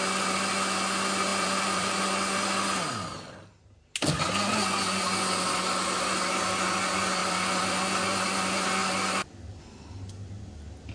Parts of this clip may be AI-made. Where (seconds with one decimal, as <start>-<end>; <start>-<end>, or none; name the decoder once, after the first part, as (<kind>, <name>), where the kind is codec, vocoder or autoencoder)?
1.3-2.0 (vocoder, BigVGAN v2); 7.2-7.8